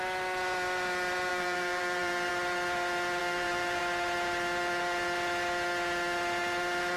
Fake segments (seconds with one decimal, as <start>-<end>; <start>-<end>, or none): 1.3-2.3; 3.2-3.8